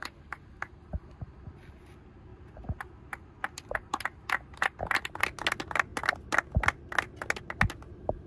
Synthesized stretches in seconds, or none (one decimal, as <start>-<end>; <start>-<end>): none